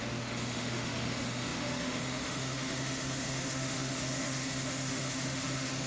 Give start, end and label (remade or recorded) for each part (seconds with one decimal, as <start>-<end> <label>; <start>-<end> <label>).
0.0-5.9 remade